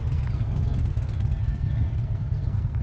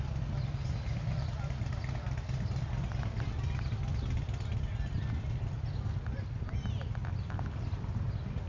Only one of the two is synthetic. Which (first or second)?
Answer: first